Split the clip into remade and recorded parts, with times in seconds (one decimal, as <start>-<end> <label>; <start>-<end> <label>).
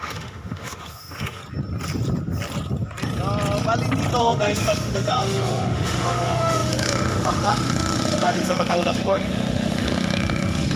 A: 0.0-1.4 remade; 1.4-4.2 recorded; 4.2-10.8 remade